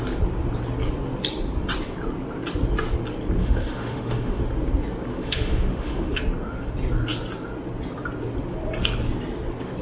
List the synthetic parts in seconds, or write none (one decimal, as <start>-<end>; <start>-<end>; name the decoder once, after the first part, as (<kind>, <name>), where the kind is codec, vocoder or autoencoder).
3.4-4.4 (autoencoder, DAC-VAE); 5.1-6.2